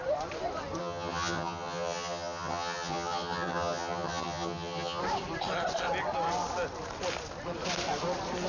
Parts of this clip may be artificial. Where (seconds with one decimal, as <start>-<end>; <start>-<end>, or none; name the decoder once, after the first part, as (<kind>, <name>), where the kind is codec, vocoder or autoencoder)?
0.8-5.0 (vocoder, HiFi-GAN)